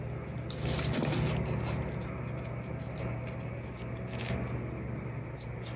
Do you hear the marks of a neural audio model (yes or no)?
no